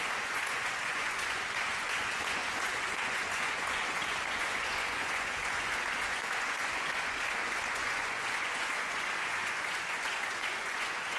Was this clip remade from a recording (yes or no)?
yes